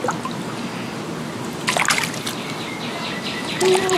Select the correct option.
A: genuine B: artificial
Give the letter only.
A